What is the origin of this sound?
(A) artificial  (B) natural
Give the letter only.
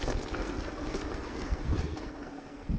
A